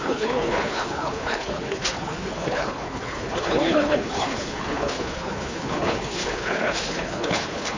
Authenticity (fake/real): fake